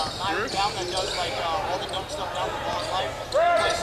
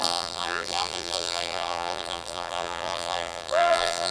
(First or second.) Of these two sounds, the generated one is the second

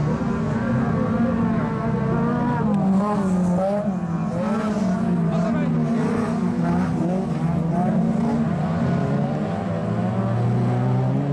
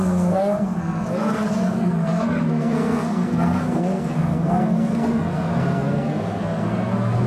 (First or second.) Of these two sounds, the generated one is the second